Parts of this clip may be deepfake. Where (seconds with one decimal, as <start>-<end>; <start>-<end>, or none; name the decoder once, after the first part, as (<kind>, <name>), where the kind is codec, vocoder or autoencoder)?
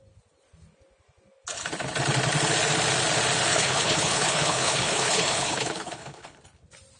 3.5-6.4 (codec, HILCodec)